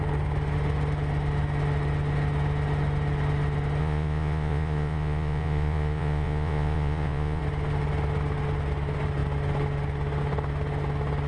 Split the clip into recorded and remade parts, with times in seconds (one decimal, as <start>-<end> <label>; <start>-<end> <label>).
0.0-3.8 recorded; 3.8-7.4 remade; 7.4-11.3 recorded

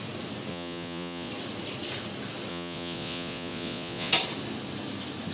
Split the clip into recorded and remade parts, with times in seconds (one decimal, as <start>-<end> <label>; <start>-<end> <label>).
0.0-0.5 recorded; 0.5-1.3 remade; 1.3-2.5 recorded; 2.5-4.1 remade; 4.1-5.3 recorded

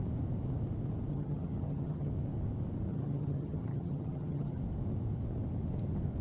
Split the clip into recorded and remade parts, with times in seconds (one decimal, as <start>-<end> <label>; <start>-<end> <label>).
0.0-1.1 recorded; 1.1-2.1 remade; 2.1-2.9 recorded; 2.9-4.6 remade; 4.6-6.2 recorded

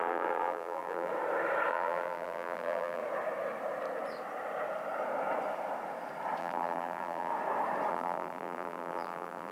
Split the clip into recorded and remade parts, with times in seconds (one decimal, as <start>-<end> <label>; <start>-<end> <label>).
0.0-1.1 remade; 1.1-1.7 recorded; 1.7-3.0 remade; 3.0-6.4 recorded; 6.4-7.3 remade; 7.3-7.9 recorded; 7.9-9.5 remade